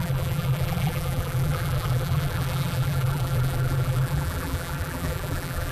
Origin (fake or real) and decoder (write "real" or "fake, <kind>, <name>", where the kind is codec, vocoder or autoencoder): fake, vocoder, BigVGAN v2